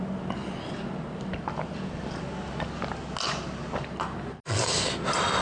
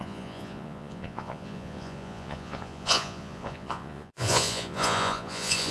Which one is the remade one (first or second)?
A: second